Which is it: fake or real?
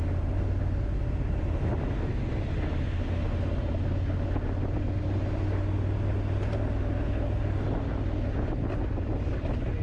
real